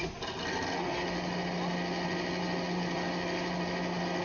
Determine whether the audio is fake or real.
real